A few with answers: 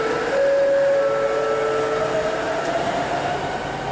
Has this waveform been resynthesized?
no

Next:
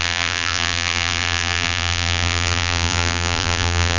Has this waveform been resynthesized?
yes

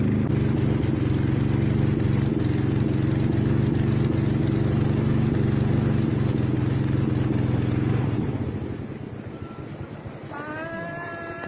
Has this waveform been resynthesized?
no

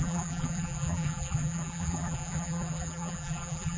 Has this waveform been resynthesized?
yes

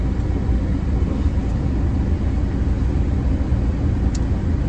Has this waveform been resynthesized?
no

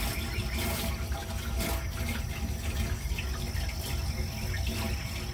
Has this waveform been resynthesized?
no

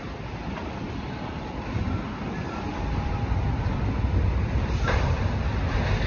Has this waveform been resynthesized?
no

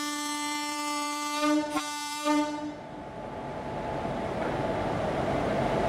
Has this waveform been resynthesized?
yes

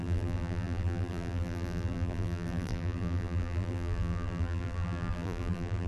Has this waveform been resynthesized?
yes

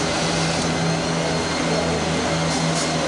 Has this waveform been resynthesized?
no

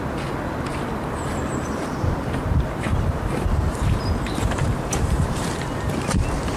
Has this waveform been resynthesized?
yes